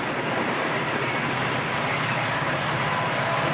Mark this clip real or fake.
fake